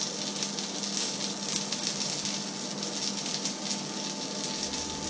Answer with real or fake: real